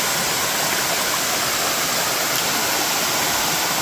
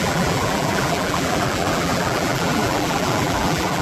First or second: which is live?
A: first